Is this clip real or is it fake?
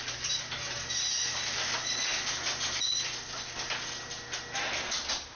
real